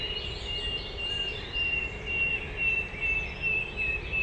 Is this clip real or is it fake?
real